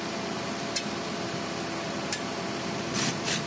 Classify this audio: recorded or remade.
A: remade